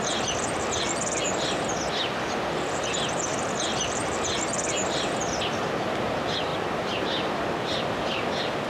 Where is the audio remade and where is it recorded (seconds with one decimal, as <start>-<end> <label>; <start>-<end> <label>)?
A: 0.0-8.7 remade